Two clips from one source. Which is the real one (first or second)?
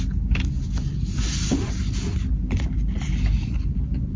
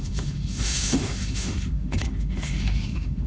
first